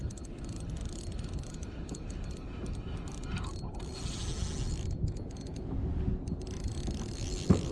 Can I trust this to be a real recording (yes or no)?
yes